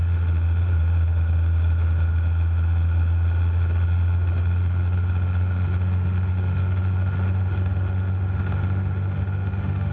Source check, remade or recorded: remade